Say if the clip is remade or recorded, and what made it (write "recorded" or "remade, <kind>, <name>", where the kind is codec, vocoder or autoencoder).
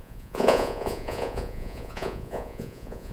remade, vocoder, Vocos